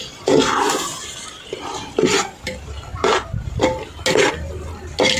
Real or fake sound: real